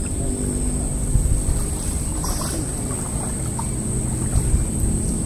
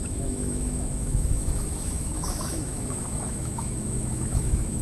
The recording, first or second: first